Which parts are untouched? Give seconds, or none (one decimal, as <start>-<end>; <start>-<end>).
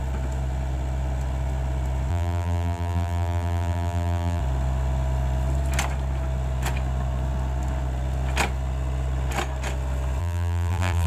0.0-2.1; 4.4-10.2